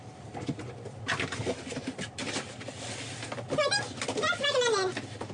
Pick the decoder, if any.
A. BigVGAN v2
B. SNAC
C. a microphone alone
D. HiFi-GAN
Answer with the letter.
A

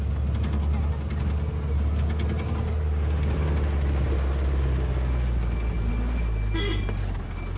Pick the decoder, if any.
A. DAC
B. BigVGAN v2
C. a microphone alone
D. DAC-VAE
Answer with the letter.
C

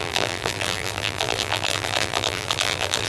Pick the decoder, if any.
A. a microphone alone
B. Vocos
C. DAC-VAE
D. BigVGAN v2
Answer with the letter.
D